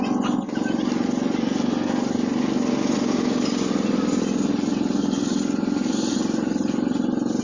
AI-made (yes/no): no